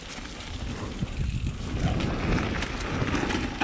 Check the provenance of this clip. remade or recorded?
recorded